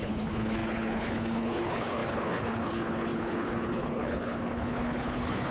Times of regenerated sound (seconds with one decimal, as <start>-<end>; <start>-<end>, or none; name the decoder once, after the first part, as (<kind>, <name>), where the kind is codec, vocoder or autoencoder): 0.0-5.5 (codec, HILCodec)